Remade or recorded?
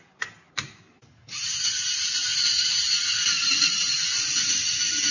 recorded